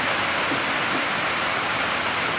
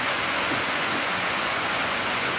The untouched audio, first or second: first